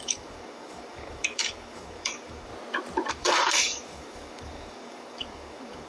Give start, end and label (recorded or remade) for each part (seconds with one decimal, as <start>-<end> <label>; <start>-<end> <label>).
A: 0.0-2.5 remade; 2.5-3.1 recorded; 3.1-5.9 remade